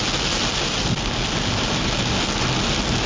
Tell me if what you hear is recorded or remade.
recorded